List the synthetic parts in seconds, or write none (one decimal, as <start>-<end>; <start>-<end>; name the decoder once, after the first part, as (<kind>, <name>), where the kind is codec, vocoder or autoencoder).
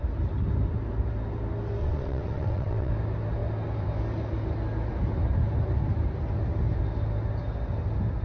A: 1.8-2.9 (vocoder, WaveNeXt)